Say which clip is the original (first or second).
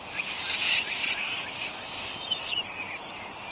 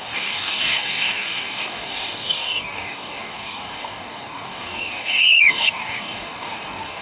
first